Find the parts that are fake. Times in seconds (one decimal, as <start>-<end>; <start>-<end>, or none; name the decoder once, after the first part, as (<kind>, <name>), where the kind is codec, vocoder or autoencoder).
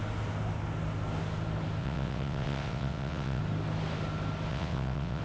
1.8-3.4 (vocoder, WaveNeXt); 4.5-5.2